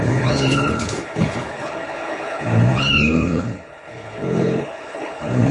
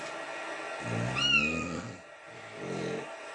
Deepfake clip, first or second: first